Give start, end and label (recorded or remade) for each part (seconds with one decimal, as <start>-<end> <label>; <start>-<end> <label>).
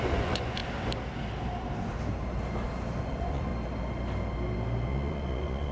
0.0-0.6 remade; 0.6-3.0 recorded; 3.0-3.5 remade; 3.5-4.9 recorded; 4.9-5.7 remade